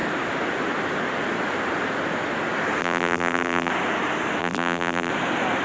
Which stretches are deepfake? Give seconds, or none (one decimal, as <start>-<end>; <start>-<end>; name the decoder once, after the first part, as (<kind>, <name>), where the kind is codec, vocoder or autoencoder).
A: 2.8-3.7 (vocoder, BigVGAN v2); 4.4-5.1